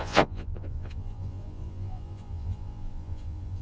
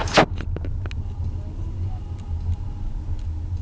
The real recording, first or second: second